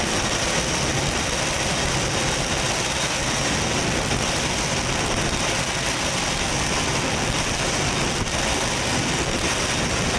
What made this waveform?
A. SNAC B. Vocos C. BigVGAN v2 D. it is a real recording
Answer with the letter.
D